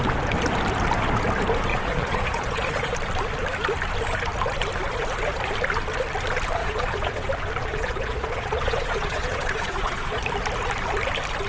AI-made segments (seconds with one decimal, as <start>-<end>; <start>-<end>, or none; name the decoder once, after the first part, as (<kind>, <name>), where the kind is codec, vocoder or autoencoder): 1.7-2.9 (vocoder, Vocos); 6.6-7.3; 7.7-10.2

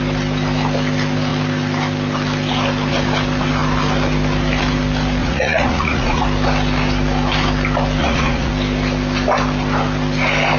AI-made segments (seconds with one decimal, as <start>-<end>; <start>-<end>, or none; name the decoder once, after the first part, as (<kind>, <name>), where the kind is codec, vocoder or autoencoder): 5.2-6.2 (vocoder, Vocos); 8.0-8.5

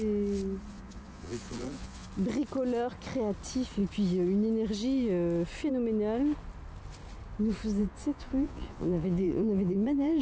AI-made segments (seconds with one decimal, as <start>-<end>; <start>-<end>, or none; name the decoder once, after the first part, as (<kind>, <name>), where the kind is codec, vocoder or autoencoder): 0.7-2.1 (vocoder, Vocos); 7.8-10.2

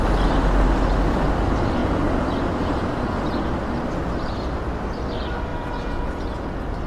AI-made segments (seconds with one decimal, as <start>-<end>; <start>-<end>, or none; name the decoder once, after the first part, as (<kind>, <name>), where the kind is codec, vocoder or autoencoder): 1.8-3.4 (vocoder, Vocos); 5.5-6.4

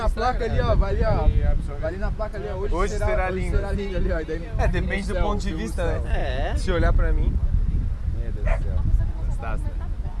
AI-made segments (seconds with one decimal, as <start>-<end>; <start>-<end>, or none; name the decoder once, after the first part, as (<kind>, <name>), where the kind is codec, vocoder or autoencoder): none

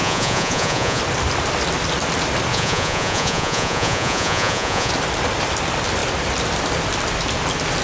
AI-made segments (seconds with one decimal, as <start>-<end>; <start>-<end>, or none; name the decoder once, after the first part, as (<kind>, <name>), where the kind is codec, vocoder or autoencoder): 0.0-1.0 (vocoder, Vocos); 2.5-4.9

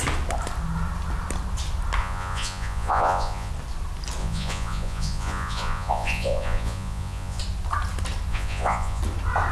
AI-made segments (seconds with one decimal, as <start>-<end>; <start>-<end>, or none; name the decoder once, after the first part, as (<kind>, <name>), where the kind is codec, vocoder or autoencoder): 2.0-3.5 (vocoder, Vocos); 4.2-7.4; 8.3-9.0

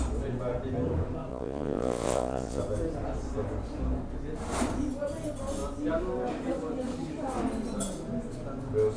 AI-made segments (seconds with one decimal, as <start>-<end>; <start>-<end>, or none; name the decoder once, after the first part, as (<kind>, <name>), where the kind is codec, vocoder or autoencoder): 1.3-2.6 (vocoder, Vocos)